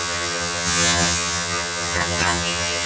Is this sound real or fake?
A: fake